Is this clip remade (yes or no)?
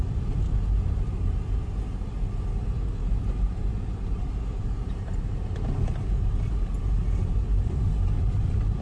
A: no